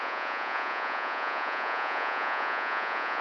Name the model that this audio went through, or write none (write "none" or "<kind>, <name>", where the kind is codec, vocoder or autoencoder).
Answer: vocoder, Vocos